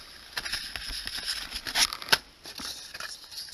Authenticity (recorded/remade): recorded